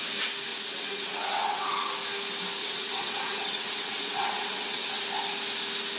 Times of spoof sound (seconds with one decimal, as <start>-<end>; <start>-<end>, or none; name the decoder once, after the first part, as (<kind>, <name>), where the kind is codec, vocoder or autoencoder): 0.5-1.7 (vocoder, WaveNeXt); 2.6-5.0